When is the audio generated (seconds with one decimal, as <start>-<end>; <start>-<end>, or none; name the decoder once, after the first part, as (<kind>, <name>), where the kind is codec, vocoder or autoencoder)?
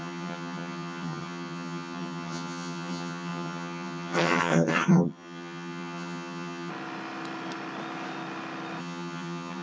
0.0-6.7 (vocoder, HiFi-GAN); 8.8-9.6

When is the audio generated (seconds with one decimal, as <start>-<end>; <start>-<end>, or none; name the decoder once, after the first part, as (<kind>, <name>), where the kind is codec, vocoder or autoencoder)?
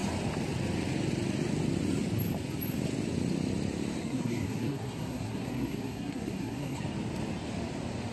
4.0-6.8 (codec, SNAC)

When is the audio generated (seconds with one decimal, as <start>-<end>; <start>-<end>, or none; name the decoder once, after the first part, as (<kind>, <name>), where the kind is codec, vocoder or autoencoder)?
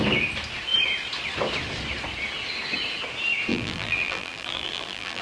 3.5-5.2 (vocoder, BigVGAN v2)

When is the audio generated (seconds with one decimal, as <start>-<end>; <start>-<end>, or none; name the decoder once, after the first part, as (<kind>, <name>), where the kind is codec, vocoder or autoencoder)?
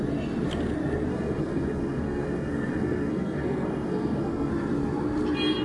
1.1-4.5 (codec, SNAC)